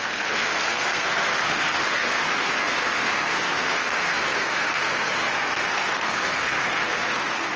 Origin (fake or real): fake